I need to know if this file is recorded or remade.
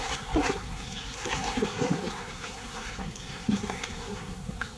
remade